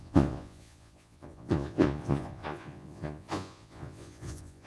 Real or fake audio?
fake